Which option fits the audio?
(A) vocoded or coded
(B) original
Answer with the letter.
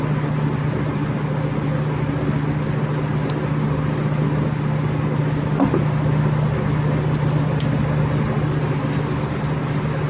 B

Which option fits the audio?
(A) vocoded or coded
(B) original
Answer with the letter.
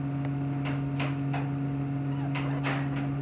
B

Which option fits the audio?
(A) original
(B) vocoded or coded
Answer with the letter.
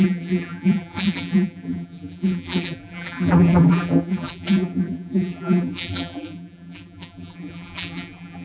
B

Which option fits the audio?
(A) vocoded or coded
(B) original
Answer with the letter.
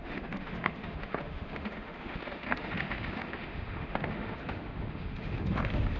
A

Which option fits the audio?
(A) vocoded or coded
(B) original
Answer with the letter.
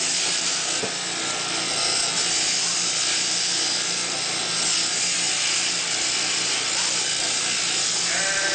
B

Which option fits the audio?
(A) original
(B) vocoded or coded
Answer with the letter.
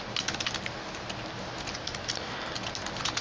A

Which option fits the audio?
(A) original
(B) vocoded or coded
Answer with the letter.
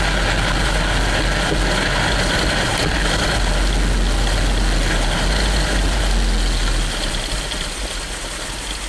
A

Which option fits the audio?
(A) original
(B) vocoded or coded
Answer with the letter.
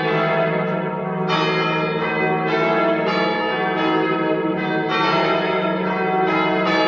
A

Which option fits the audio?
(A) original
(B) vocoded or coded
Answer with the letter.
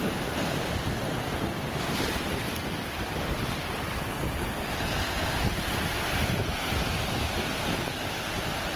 A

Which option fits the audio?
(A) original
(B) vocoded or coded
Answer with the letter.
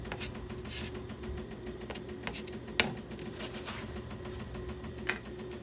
A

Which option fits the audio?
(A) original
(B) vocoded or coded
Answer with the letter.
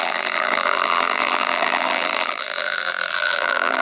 B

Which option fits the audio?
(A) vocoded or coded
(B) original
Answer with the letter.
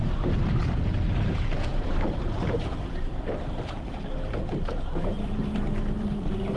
A